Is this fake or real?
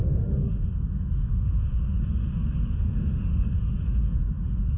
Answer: fake